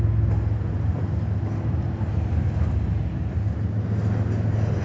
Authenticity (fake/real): real